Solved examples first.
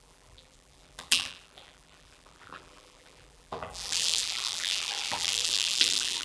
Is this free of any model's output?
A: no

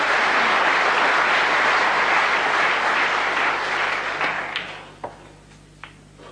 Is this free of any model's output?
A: yes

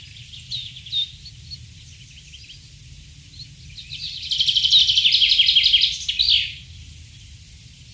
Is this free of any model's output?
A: yes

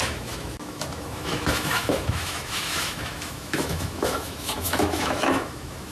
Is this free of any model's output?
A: no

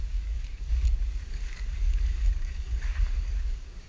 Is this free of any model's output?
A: no